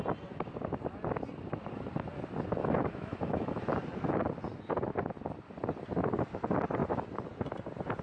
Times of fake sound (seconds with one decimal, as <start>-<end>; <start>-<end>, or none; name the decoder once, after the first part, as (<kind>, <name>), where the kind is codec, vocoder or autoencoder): 2.6-3.6 (autoencoder, DAC-VAE)

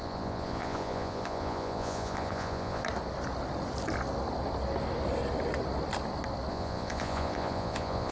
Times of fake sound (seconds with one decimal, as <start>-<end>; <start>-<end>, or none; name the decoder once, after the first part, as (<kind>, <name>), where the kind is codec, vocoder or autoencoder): 0.0-2.8 (vocoder, Vocos); 6.5-8.1